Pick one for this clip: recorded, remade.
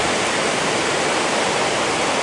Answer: recorded